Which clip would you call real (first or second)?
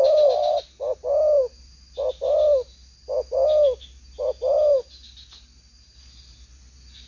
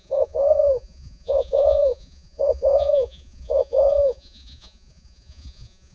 first